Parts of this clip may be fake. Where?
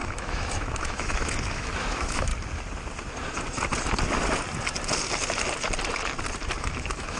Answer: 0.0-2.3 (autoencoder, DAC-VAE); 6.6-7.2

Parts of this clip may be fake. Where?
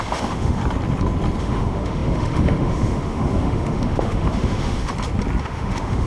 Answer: 0.0-0.6 (autoencoder, DAC-VAE); 1.4-4.9; 5.4-6.1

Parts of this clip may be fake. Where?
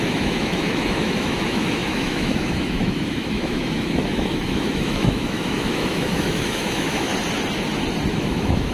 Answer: 0.0-7.1 (autoencoder, DAC-VAE); 8.1-8.7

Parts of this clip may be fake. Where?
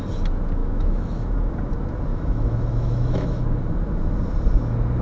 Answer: 0.6-1.5 (autoencoder, DAC-VAE); 2.1-3.6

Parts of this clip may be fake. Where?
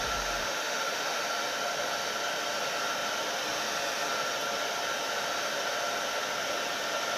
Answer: 0.4-1.2 (autoencoder, DAC-VAE)